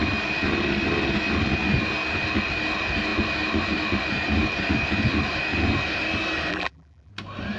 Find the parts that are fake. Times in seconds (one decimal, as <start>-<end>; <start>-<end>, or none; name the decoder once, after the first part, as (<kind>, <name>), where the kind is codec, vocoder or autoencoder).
6.5-7.1 (vocoder, BigVGAN v2)